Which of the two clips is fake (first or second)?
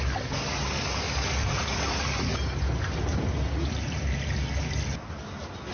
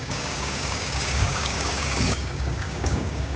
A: second